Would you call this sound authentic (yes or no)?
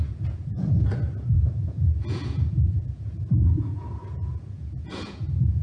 no